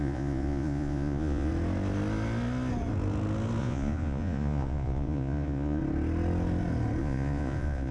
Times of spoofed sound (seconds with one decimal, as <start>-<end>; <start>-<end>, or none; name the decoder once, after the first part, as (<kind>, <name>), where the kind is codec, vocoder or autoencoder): 0.0-1.5 (vocoder, Vocos); 3.6-5.8; 7.0-7.9